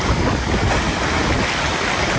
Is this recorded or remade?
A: recorded